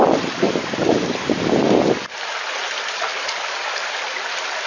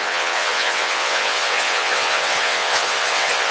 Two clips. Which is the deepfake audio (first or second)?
second